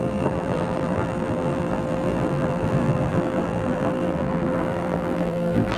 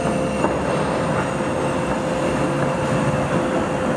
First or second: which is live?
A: second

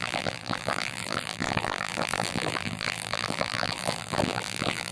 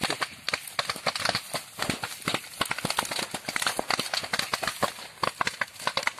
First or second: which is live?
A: second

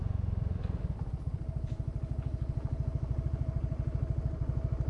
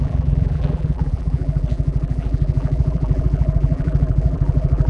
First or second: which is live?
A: first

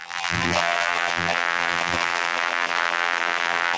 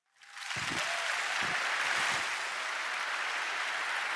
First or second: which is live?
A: second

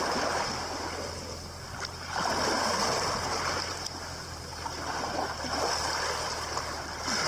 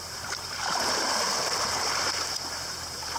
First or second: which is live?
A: first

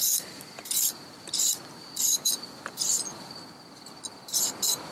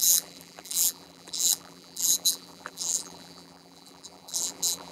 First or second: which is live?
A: first